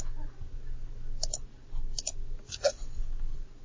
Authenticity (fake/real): real